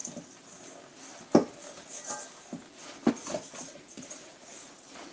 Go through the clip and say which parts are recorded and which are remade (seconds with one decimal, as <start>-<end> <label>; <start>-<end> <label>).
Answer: 0.0-3.1 recorded; 3.1-5.1 remade